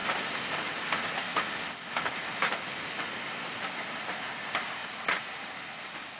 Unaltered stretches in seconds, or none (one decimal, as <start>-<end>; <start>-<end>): 0.0-6.2